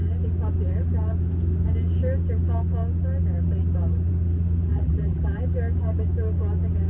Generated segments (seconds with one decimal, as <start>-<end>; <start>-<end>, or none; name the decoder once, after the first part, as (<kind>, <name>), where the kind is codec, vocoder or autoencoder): 4.7-5.4 (vocoder, BigVGAN v2)